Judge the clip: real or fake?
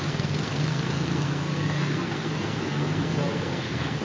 fake